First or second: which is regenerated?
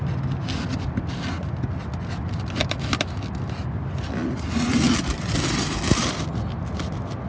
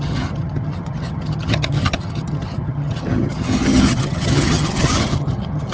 second